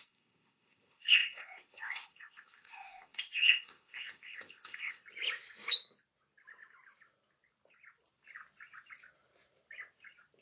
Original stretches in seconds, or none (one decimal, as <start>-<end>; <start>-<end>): 5.0-10.4